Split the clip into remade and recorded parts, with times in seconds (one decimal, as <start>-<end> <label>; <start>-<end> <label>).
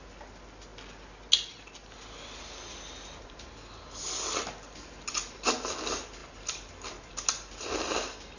0.0-8.4 recorded